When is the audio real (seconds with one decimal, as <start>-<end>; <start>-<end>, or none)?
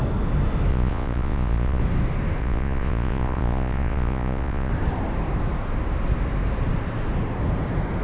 0.0-0.7; 1.8-2.4; 4.7-8.0